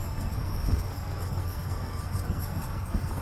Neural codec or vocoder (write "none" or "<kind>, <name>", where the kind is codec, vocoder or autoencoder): codec, SNAC